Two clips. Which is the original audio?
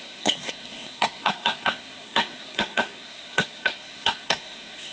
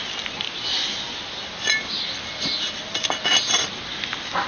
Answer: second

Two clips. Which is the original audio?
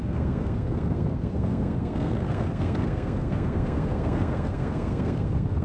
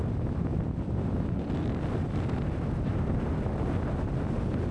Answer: second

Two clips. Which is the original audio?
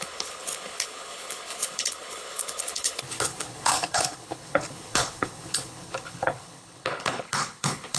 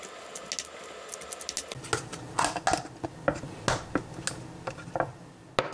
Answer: second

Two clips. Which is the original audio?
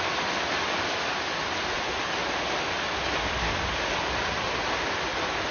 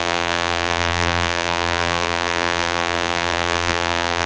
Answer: first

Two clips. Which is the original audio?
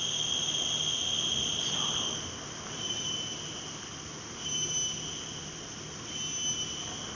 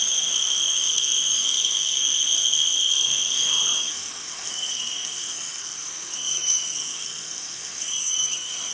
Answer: first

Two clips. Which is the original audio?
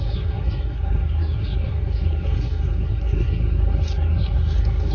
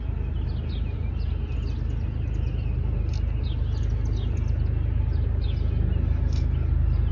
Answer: second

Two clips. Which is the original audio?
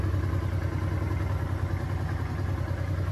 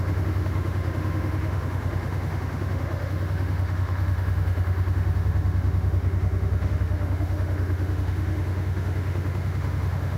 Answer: first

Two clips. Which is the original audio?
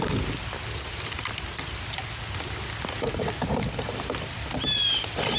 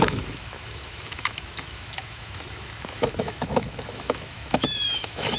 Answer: first